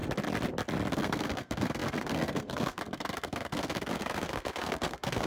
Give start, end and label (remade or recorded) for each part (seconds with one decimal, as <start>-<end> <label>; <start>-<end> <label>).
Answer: 0.0-0.9 recorded; 0.9-5.3 remade